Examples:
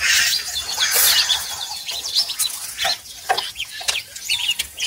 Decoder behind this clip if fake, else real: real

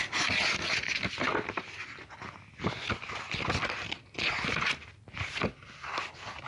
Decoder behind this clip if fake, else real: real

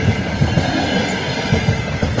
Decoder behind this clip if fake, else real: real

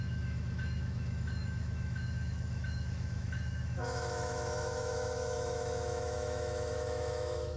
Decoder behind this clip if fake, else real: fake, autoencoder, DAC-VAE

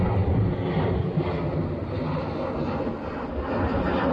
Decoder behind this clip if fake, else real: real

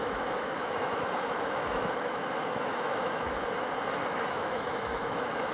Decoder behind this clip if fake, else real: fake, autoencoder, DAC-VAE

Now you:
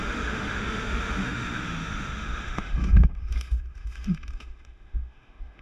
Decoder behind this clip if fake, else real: fake, autoencoder, DAC-VAE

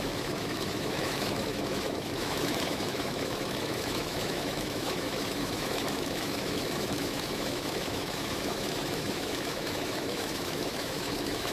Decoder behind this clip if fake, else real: fake, autoencoder, DAC-VAE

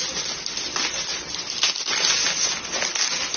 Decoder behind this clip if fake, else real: real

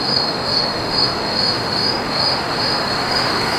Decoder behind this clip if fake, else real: fake, autoencoder, DAC-VAE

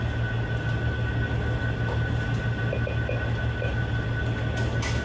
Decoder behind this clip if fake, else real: real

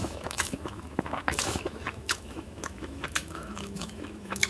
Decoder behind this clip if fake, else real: fake, autoencoder, DAC-VAE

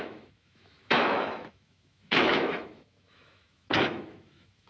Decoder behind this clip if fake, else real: fake, autoencoder, DAC-VAE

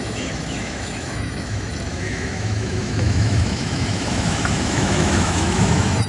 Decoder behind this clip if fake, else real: fake, autoencoder, DAC-VAE